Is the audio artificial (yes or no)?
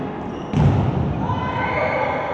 no